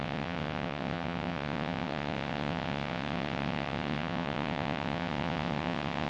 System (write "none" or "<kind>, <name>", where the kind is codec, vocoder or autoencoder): vocoder, WaveNeXt